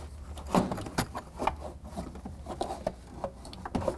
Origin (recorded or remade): recorded